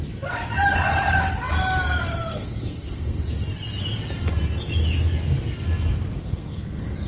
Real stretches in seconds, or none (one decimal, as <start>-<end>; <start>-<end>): 0.0-2.3; 3.2-6.2